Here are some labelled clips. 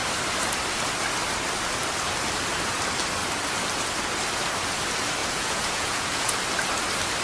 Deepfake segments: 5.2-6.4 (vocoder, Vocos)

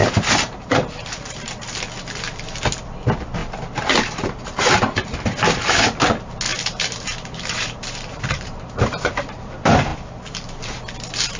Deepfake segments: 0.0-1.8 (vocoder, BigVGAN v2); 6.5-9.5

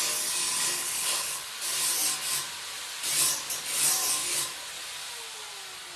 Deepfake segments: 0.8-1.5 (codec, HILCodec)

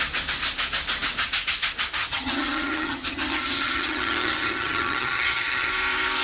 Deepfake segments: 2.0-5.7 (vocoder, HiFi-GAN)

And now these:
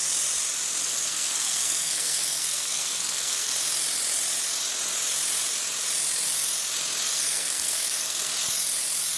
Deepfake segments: 0.8-3.5 (codec, SNAC); 7.1-8.3

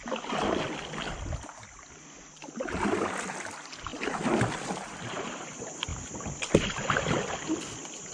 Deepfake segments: none